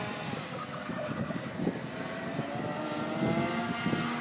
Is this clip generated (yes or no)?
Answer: no